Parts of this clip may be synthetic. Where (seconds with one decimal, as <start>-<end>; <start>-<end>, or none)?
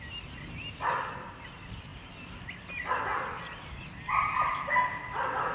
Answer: none